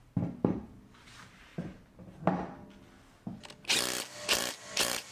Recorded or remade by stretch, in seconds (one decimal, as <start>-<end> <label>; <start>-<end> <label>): 0.0-1.5 remade; 1.5-4.4 recorded; 4.4-5.1 remade